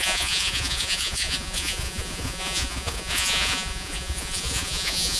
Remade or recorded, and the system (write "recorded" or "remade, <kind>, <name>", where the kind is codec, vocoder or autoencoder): remade, vocoder, Vocos